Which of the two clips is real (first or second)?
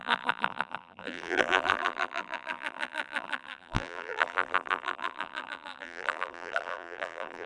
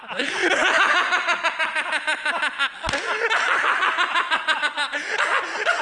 second